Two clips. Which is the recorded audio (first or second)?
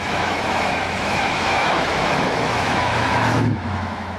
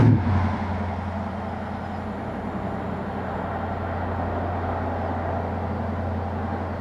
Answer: second